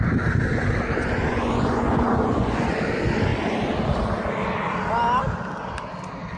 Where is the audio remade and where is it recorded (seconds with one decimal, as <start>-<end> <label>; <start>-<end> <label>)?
0.0-1.0 recorded; 1.0-2.8 remade; 2.8-6.4 recorded